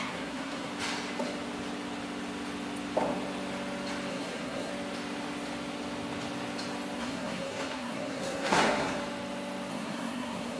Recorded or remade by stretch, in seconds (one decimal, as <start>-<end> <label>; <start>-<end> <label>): 0.0-0.7 remade; 0.7-4.1 recorded; 4.1-4.7 remade; 4.7-7.0 recorded; 7.0-9.0 remade; 9.0-9.7 recorded; 9.7-10.6 remade